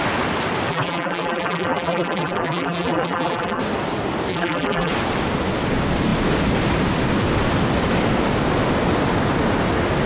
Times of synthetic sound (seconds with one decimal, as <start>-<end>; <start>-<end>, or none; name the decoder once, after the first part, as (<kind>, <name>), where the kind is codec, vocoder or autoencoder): 0.7-3.6 (vocoder, BigVGAN v2); 4.3-4.9